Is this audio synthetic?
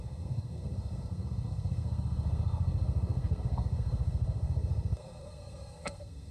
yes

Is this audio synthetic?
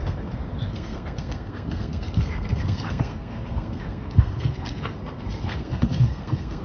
yes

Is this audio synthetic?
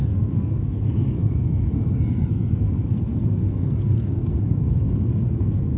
yes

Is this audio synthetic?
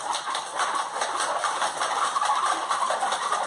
no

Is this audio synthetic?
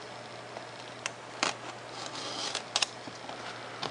no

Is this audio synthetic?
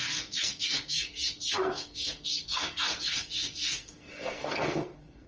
yes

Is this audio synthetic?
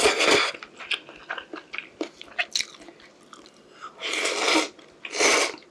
no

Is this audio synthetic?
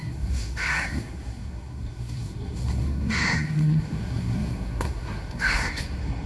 yes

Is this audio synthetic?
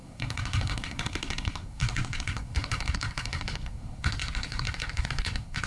yes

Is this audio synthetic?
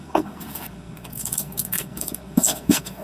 yes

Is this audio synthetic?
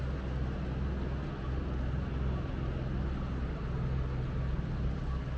no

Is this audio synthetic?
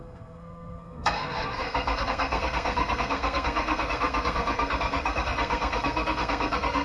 yes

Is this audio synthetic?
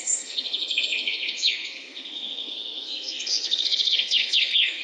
yes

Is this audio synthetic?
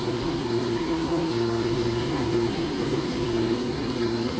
yes